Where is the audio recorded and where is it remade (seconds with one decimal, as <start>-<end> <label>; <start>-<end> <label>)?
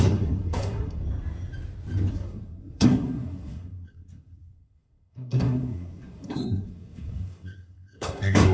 0.0-1.0 remade; 1.0-2.1 recorded; 2.1-8.5 remade